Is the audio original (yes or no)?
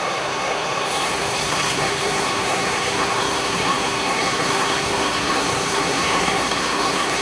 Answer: no